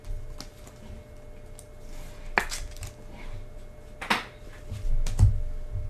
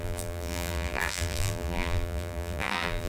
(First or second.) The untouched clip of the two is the first